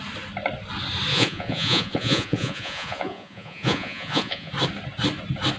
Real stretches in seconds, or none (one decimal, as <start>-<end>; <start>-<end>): 0.0-1.1; 4.5-5.6